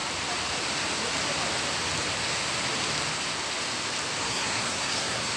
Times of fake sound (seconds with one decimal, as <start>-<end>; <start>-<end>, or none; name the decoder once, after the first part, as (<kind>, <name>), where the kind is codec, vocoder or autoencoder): 4.2-5.4 (codec, SNAC)